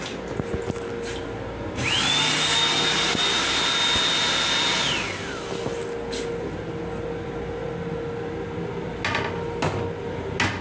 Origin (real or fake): real